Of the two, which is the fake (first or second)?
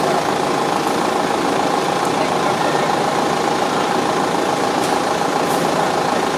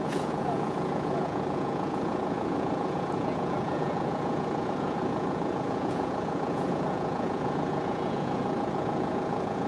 second